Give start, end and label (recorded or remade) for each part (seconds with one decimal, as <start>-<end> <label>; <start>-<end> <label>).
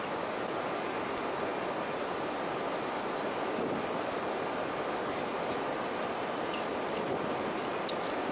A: 0.0-8.3 recorded